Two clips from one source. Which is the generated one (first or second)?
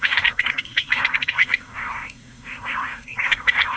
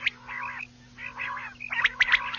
first